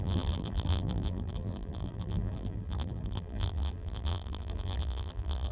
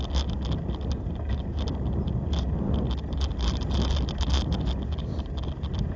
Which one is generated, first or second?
first